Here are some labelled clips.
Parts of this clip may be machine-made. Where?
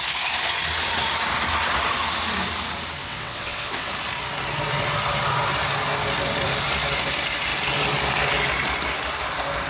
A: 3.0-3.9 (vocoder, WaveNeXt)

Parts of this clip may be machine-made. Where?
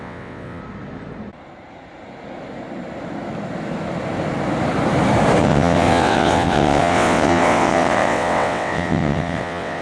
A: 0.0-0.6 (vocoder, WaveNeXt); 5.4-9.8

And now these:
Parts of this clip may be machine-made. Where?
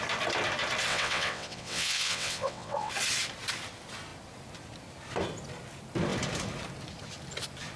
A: 0.9-2.9 (vocoder, WaveNeXt)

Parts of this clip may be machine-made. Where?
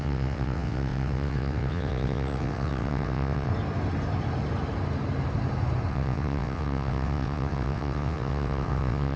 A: 0.0-3.5 (vocoder, WaveNeXt); 5.9-9.2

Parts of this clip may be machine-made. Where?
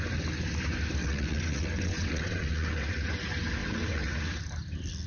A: 1.0-3.1 (vocoder, WaveNeXt); 3.6-4.4